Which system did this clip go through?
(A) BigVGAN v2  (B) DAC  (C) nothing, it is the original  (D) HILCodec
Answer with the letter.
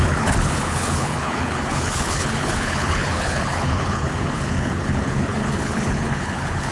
D